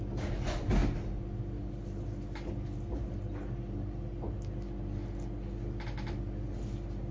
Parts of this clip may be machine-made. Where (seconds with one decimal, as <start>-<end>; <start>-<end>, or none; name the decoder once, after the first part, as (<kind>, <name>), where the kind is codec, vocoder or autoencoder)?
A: none